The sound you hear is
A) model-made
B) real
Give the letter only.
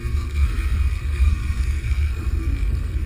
A